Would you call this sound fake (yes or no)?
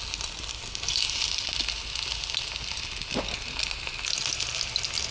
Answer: no